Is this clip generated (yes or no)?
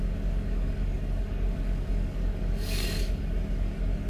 yes